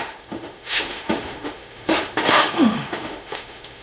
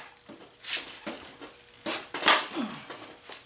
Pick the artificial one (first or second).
first